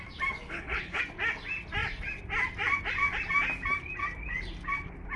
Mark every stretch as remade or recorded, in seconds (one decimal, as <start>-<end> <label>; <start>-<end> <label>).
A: 0.0-0.4 recorded; 0.4-1.0 remade; 1.0-5.2 recorded